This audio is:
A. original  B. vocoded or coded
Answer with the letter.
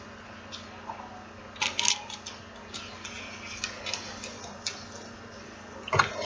A